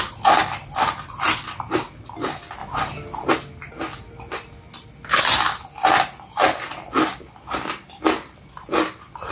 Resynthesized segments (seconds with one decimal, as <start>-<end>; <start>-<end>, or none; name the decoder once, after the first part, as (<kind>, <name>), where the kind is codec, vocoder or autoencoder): none